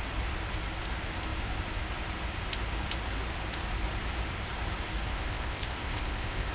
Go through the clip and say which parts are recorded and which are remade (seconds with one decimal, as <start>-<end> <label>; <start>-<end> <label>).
0.0-5.1 recorded; 5.1-6.5 remade